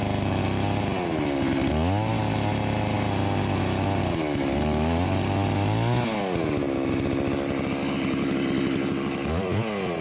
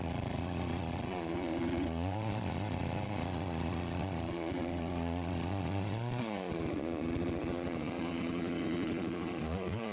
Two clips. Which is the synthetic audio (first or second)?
second